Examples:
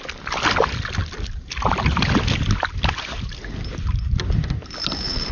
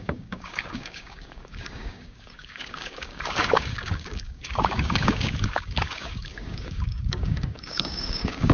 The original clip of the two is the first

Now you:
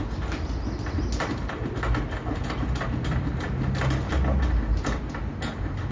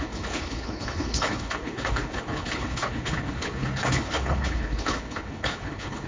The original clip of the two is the first